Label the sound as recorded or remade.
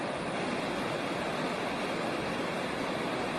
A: recorded